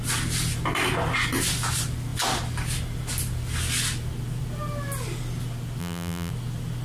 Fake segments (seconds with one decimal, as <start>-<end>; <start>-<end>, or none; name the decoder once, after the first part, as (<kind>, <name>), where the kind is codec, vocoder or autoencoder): 5.8-6.3 (vocoder, BigVGAN v2)